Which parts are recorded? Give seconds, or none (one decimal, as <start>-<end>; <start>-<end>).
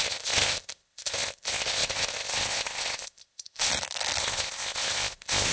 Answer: 3.7-4.2